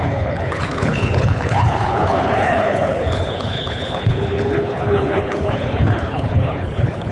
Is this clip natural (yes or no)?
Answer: no